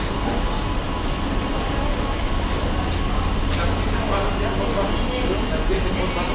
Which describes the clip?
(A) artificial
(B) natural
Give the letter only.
B